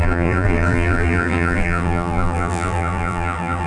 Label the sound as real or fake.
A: fake